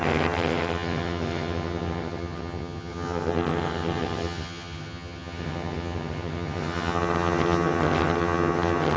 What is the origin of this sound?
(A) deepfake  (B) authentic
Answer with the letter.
A